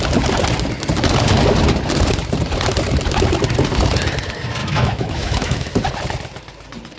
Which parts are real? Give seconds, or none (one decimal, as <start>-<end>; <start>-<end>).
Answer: 0.0-4.6; 5.7-7.0

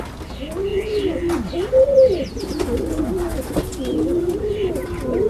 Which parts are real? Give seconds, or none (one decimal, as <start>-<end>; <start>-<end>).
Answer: 0.0-5.3

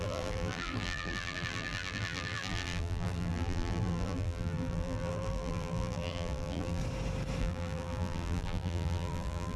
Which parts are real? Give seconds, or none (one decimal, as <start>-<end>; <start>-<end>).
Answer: 6.8-7.4

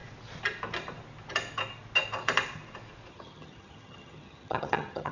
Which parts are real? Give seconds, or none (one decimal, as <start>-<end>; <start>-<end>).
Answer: 0.0-3.1

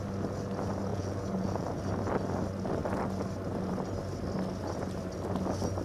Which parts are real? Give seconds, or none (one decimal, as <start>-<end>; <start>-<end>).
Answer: 0.0-0.9; 1.8-5.8

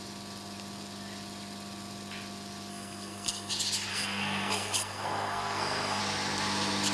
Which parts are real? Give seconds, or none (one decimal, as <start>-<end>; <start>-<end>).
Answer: 0.0-2.7; 3.5-3.9; 6.0-6.9

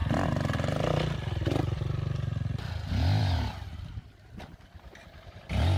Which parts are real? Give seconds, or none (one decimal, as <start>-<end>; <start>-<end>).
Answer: 0.0-5.8

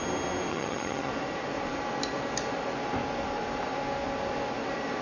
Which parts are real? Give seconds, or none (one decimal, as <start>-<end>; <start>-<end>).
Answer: 0.0-0.5; 1.1-5.0